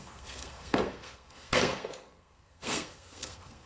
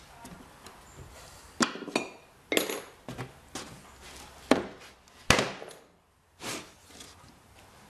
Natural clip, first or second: second